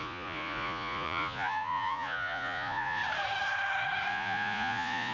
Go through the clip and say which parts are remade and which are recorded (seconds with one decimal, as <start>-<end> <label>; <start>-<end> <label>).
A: 0.0-3.0 remade; 3.0-4.1 recorded; 4.1-5.1 remade